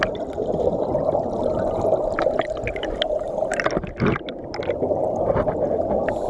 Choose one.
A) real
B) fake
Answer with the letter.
A